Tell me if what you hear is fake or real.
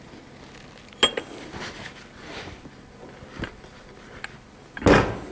real